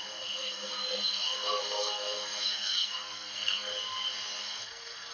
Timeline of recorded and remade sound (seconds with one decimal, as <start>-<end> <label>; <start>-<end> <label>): 0.0-3.7 remade; 3.7-4.4 recorded; 4.4-5.1 remade